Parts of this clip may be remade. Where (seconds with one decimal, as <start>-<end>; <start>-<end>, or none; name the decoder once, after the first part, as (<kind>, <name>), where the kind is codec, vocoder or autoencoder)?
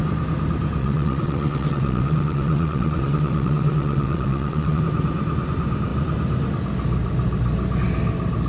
0.8-4.8 (vocoder, WaveNeXt)